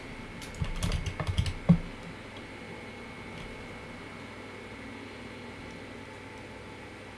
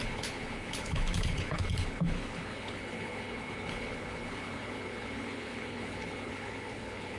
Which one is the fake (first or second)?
second